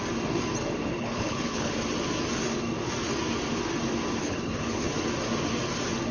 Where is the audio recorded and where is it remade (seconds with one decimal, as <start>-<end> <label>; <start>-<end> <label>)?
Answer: 0.0-0.9 recorded; 0.9-1.7 remade; 1.7-4.2 recorded; 4.2-4.9 remade; 4.9-6.1 recorded